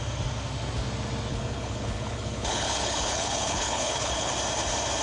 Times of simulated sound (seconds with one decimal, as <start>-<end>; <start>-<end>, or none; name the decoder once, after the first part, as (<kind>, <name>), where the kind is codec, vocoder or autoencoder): 1.3-4.3 (codec, HILCodec)